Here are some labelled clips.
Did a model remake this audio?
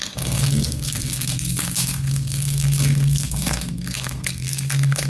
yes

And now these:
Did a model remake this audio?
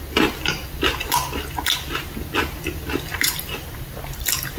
no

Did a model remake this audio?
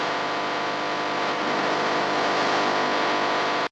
no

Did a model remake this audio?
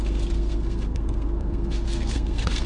yes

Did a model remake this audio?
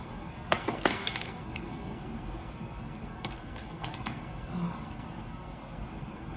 yes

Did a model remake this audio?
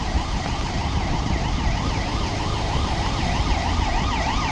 no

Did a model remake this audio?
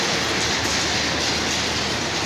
no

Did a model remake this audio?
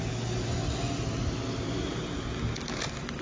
no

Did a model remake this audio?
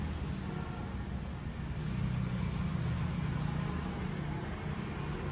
no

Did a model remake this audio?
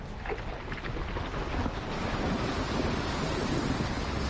no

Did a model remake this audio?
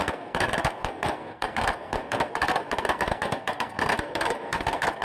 yes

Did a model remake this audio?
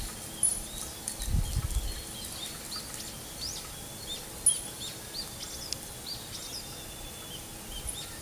no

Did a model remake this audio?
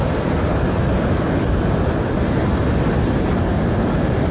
no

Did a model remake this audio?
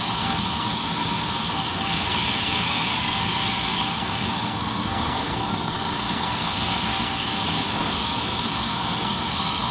yes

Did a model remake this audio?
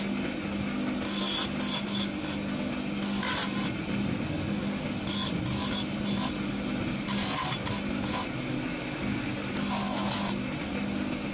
no